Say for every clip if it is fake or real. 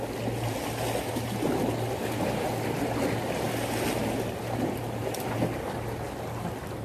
real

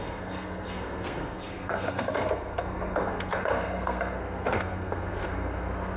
fake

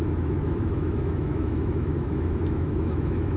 fake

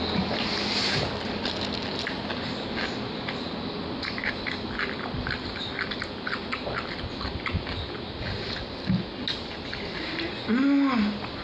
real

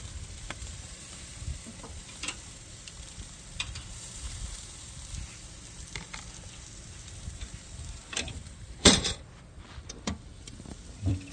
fake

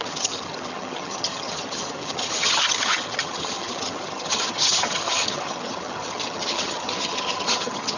fake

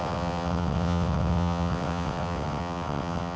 fake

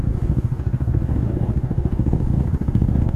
fake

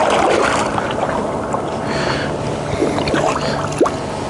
real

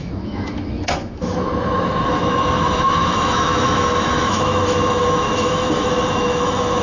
fake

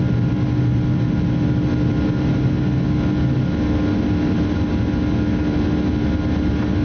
real